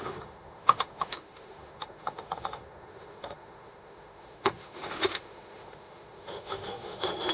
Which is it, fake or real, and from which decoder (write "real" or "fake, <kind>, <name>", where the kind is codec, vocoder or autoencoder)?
fake, autoencoder, DAC-VAE